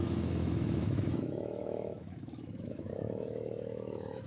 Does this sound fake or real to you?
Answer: fake